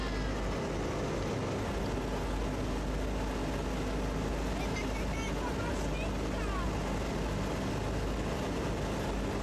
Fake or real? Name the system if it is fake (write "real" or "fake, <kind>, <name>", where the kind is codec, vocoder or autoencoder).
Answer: real